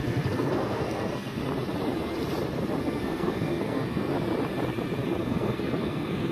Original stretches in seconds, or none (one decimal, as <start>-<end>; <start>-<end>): 1.4-2.8; 4.1-5.2